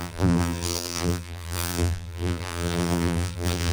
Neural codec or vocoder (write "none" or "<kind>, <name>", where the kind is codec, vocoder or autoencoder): vocoder, BigVGAN v2